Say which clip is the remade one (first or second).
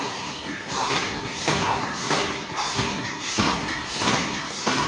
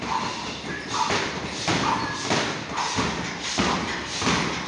first